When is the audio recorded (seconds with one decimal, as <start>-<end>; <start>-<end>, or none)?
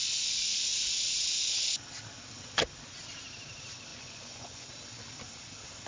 0.0-3.9; 4.7-5.9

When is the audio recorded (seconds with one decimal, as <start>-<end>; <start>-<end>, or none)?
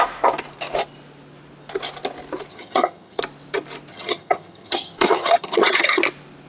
0.0-2.5; 3.2-3.9; 6.0-6.5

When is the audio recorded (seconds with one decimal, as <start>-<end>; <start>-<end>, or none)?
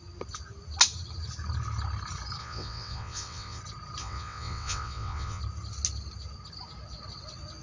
0.0-2.4; 3.6-4.0; 5.4-7.6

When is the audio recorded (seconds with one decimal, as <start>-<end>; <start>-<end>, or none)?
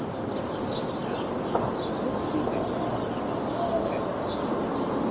0.0-5.1